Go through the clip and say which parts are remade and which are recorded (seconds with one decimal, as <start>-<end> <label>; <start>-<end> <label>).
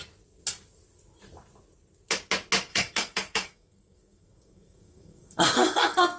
0.0-2.7 recorded; 2.7-6.2 remade